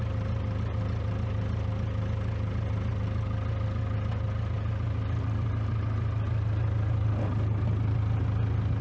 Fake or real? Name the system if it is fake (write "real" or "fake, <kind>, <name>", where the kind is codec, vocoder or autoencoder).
real